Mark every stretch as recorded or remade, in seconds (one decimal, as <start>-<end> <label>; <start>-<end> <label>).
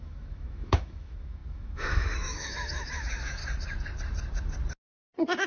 0.0-3.4 remade; 3.4-5.5 recorded